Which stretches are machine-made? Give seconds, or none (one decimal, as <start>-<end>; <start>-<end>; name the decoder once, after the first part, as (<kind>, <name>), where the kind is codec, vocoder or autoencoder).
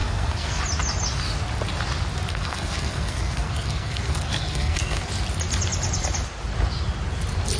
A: 0.0-0.6 (codec, SNAC); 2.3-5.1